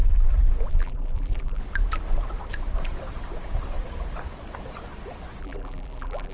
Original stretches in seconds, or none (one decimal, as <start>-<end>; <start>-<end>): 0.0-0.7; 1.6-5.4